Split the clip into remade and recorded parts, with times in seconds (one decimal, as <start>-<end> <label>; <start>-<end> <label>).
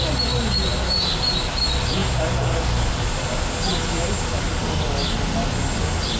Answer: 0.0-6.2 recorded